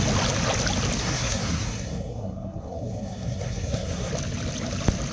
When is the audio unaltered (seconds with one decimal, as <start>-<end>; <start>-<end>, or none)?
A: 0.0-1.0; 4.1-5.1